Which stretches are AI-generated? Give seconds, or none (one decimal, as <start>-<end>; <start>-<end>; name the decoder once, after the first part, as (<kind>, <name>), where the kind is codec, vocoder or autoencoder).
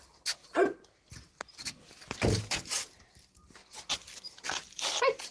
none